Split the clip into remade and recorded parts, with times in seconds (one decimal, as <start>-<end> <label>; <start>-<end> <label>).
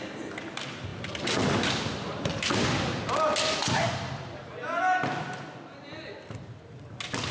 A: 0.0-7.3 recorded